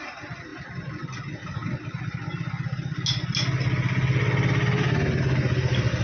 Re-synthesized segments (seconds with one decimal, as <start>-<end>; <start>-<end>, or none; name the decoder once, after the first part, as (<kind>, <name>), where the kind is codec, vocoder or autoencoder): none